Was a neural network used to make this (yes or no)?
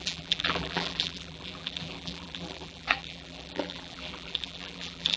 yes